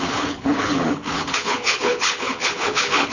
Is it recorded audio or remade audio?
remade